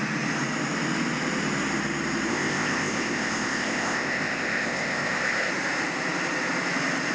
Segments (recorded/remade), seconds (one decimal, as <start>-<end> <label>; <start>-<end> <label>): 0.0-2.3 recorded; 2.3-5.5 remade; 5.5-7.1 recorded